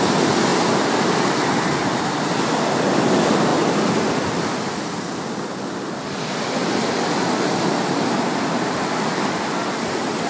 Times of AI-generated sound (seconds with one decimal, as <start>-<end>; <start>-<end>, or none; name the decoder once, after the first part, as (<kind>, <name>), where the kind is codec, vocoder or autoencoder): none